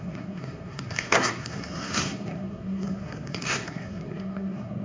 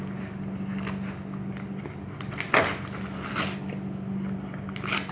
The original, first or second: second